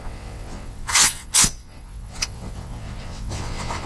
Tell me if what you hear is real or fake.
fake